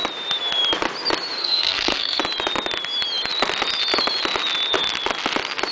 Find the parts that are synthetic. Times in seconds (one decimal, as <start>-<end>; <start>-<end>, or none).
1.4-2.2